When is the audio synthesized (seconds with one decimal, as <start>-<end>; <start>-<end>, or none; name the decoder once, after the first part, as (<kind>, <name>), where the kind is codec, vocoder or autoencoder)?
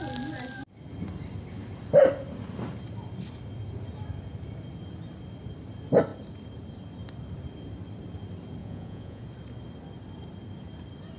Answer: 8.6-9.2 (vocoder, Vocos)